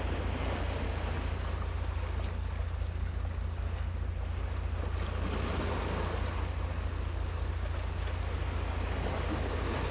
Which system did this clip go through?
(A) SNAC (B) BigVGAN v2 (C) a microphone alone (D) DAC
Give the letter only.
C